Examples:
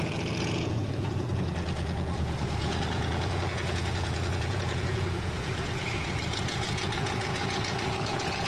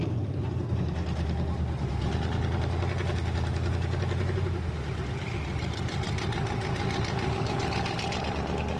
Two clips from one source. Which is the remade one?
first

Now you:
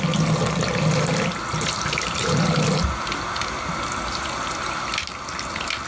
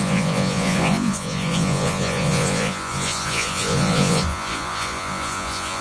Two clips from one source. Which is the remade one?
second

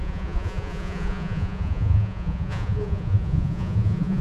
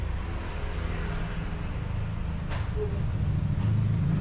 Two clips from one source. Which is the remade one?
first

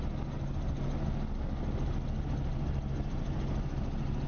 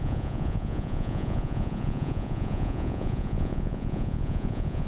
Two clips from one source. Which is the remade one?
second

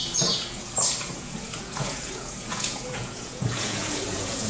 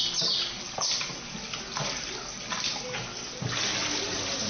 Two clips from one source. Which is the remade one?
first